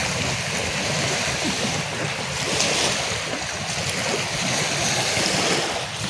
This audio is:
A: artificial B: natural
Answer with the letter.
B